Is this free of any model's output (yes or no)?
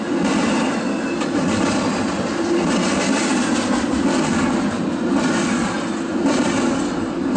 yes